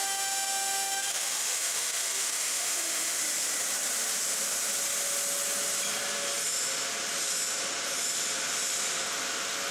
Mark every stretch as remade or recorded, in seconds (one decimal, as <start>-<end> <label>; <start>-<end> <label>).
0.0-3.2 remade; 3.2-9.7 recorded